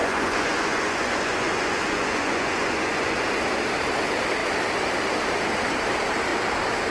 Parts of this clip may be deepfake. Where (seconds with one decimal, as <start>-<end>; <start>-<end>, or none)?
0.0-3.3